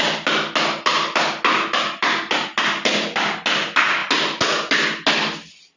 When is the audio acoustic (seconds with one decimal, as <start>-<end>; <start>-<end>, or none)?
0.0-5.8